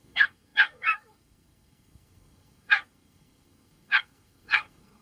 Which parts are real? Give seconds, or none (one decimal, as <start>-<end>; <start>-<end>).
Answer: none